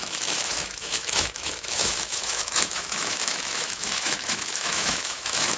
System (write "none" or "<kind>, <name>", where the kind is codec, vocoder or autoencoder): autoencoder, DAC-VAE